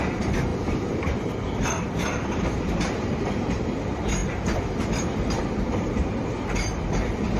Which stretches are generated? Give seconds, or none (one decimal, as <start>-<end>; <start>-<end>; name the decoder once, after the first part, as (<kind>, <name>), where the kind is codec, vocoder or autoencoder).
0.0-7.4 (vocoder, BigVGAN v2)